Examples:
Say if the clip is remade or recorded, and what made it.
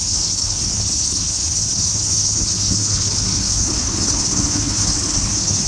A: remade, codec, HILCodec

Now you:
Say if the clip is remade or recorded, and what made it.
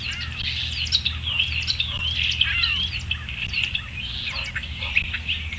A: recorded